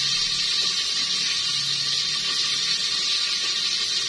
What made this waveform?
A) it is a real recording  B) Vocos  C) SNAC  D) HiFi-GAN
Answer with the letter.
A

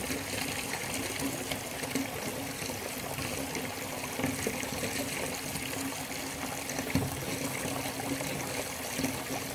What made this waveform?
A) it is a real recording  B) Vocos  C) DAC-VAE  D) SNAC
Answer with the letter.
A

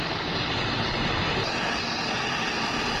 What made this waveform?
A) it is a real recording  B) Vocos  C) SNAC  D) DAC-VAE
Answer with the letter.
A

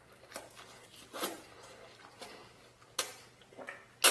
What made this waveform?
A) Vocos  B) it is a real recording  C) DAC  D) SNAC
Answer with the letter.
B